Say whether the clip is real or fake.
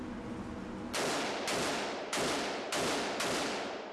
real